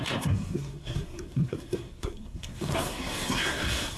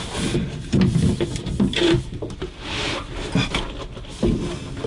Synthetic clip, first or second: first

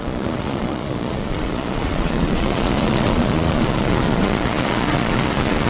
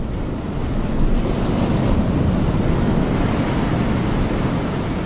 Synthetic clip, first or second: first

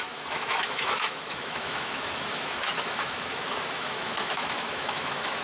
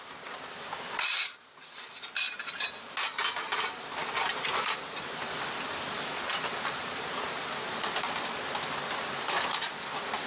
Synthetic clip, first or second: first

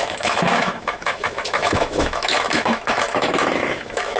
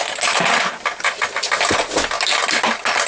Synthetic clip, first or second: first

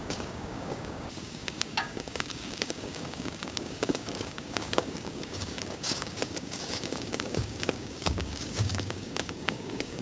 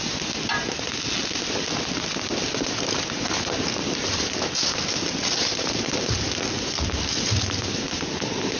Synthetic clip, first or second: first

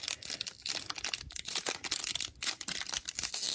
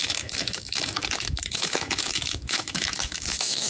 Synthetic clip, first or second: second